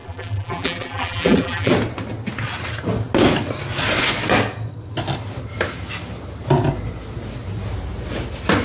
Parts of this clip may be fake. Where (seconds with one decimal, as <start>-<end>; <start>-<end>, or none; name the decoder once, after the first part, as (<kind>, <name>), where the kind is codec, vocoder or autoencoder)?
0.0-1.7 (vocoder, BigVGAN v2)